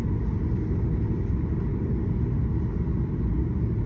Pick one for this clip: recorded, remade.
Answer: recorded